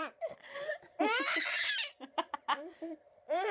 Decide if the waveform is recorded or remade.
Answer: remade